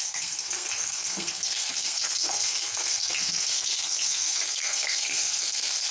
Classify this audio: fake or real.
fake